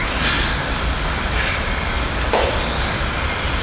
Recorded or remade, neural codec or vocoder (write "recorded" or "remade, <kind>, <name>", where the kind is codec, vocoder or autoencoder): remade, vocoder, BigVGAN v2